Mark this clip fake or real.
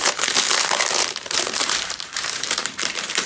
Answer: fake